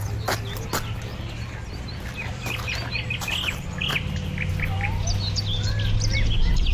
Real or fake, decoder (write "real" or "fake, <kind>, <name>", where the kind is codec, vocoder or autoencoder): real